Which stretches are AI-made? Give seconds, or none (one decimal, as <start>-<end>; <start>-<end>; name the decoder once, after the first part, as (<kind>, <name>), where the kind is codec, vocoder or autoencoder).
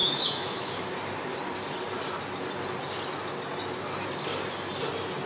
0.0-0.7 (autoencoder, DAC-VAE)